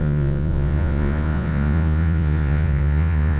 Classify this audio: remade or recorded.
remade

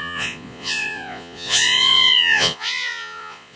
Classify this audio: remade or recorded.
remade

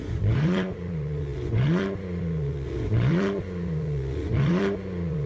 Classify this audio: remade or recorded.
remade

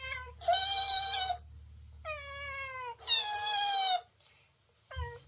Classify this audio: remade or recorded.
recorded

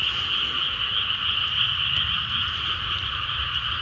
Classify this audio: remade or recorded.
recorded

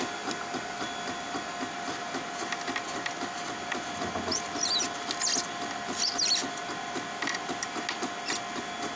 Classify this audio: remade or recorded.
recorded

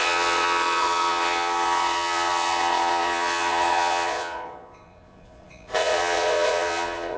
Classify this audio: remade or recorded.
remade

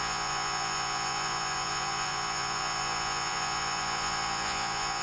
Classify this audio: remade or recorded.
remade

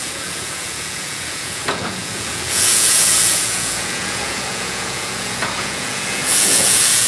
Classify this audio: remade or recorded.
remade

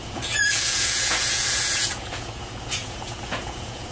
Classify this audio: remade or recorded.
remade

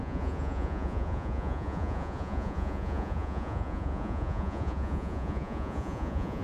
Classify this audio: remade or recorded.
remade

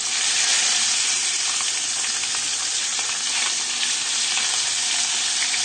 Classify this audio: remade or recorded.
recorded